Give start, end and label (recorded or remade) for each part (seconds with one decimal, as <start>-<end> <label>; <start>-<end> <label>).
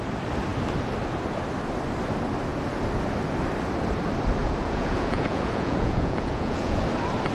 0.0-4.4 recorded; 4.4-6.8 remade; 6.8-7.3 recorded